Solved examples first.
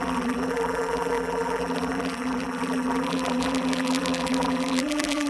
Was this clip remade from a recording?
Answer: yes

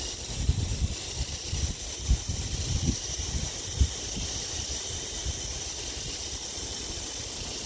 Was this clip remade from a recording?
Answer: yes